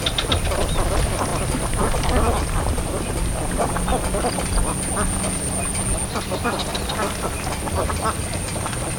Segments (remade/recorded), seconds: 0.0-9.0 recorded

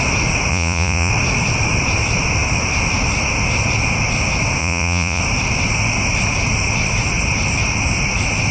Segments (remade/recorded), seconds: 0.0-0.5 recorded; 0.5-1.1 remade; 1.1-4.6 recorded; 4.6-5.2 remade; 5.2-8.5 recorded

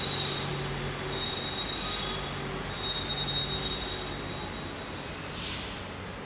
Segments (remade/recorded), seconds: 0.0-6.3 recorded

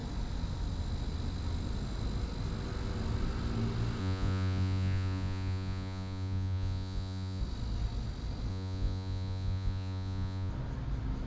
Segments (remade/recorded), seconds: 0.0-4.0 recorded; 4.0-7.4 remade; 7.4-8.5 recorded; 8.5-10.5 remade; 10.5-11.3 recorded